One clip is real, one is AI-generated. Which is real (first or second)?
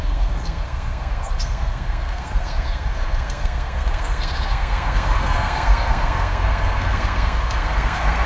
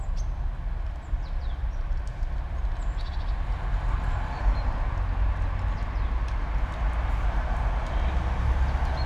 second